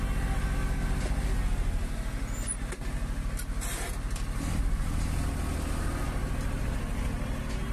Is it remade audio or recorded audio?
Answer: recorded